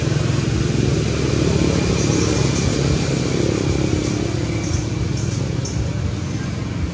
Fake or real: real